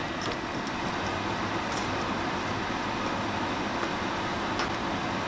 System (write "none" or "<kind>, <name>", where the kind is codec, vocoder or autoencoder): none